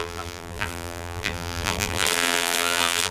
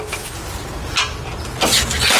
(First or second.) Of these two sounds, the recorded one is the second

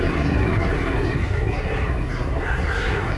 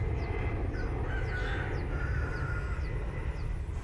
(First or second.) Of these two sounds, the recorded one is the second